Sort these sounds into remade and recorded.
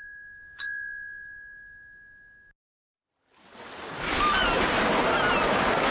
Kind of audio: recorded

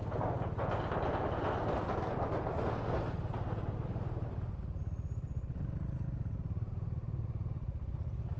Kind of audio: recorded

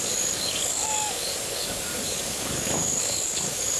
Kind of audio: remade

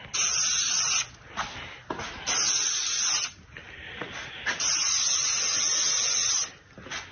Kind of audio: recorded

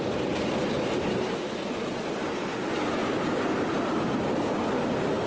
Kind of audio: recorded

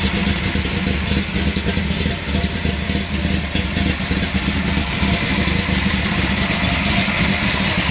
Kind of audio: recorded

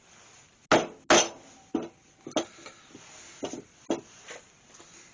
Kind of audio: recorded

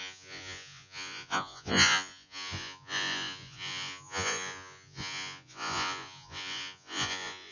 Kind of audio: remade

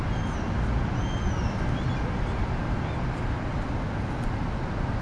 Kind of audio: recorded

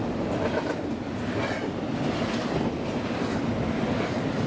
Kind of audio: recorded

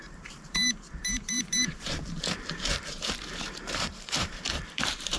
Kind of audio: remade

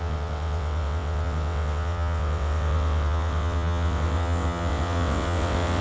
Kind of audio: remade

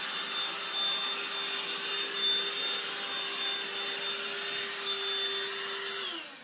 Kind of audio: recorded